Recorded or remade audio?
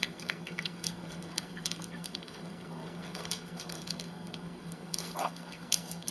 remade